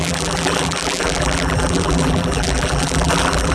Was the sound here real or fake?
fake